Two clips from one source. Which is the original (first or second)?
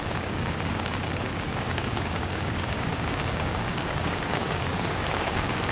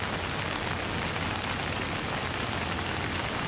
second